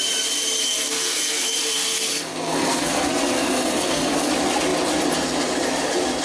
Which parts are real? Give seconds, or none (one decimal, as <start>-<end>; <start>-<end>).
0.0-0.6; 4.3-6.2